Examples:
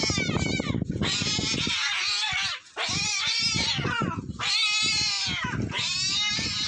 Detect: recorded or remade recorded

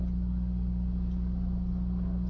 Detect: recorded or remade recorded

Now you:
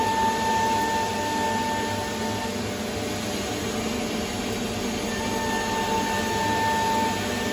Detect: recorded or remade recorded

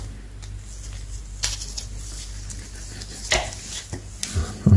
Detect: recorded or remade recorded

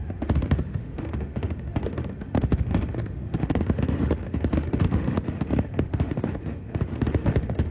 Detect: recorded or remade remade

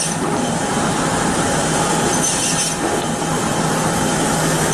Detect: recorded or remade recorded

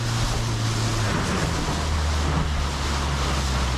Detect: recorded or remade recorded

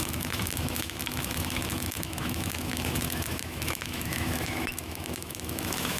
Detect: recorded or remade remade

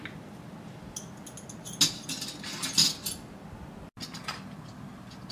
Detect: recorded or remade recorded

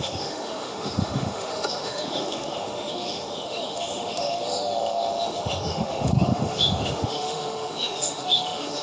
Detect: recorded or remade remade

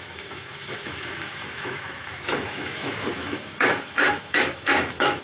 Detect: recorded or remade remade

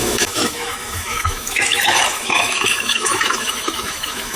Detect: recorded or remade remade